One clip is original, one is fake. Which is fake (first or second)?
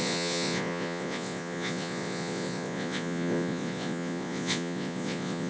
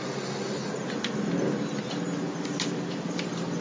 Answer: first